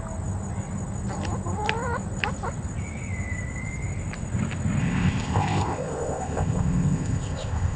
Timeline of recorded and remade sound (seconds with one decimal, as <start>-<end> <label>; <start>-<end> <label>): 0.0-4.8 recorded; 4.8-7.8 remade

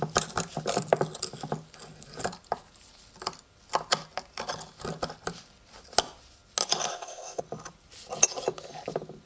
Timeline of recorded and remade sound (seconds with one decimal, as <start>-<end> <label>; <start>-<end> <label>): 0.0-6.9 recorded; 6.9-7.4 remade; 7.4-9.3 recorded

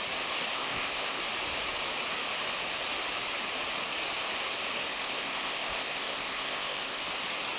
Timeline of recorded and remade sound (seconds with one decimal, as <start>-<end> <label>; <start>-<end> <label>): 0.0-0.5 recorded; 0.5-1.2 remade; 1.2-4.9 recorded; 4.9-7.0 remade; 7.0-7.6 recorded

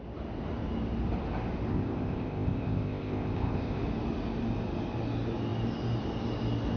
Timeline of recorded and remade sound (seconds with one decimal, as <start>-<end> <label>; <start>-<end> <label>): 0.0-1.7 recorded; 1.7-3.8 remade; 3.8-6.8 recorded

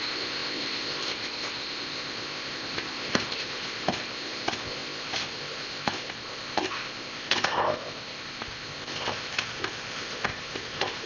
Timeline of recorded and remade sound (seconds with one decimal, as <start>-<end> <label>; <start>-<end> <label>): 0.0-11.1 remade

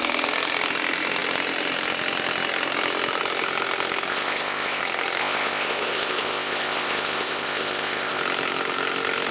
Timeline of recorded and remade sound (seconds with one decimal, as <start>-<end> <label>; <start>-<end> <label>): 0.0-4.1 recorded; 4.1-4.8 remade; 4.8-5.2 recorded; 5.2-8.2 remade; 8.2-9.3 recorded